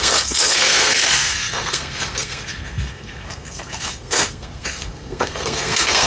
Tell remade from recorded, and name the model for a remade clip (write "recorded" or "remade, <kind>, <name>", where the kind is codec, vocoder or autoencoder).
remade, codec, SNAC